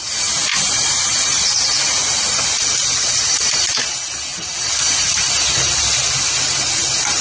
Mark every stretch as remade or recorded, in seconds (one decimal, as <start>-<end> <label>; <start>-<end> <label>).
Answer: 0.0-0.5 recorded; 0.5-1.6 remade; 1.6-4.3 recorded; 4.3-5.3 remade; 5.3-7.2 recorded